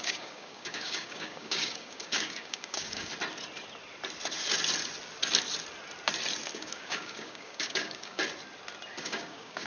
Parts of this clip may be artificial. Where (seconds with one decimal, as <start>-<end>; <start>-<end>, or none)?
0.0-3.1; 6.5-8.2; 9.0-9.7